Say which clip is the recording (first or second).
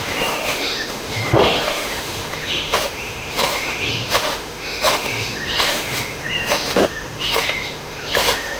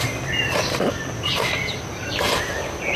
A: second